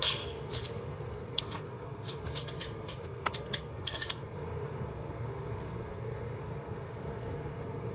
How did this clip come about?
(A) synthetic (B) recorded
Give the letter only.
A